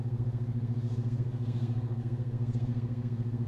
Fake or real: fake